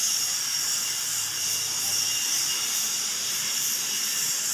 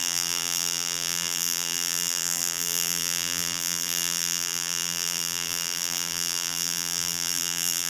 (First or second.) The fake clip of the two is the second